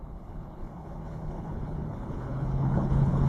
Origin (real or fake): fake